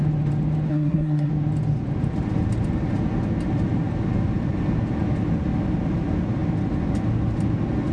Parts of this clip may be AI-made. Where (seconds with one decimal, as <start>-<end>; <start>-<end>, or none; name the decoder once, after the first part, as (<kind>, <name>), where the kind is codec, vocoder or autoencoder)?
0.7-1.3 (codec, SNAC)